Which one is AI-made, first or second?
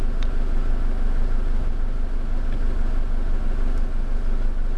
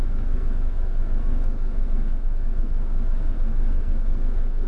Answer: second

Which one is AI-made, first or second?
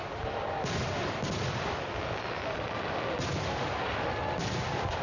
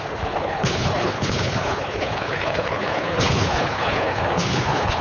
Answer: second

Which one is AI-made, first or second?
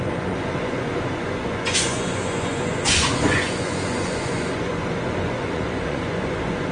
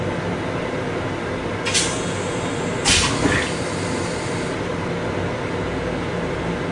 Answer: first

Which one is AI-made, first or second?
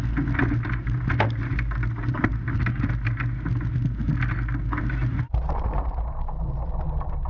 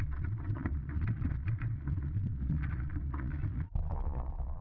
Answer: second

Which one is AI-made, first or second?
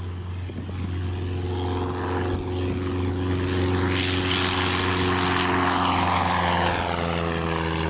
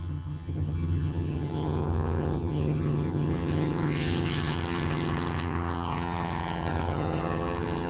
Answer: second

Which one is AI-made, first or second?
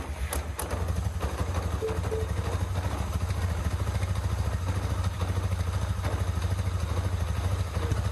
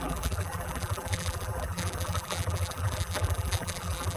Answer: second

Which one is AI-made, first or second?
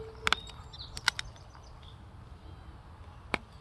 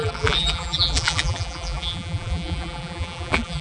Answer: second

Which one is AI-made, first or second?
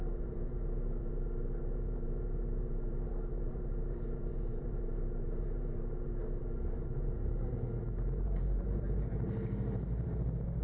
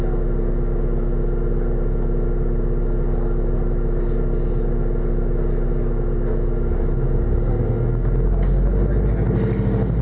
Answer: first